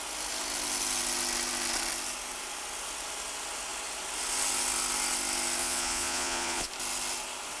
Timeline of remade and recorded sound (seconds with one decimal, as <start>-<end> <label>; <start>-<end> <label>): 0.0-5.6 recorded; 5.6-6.7 remade; 6.7-7.6 recorded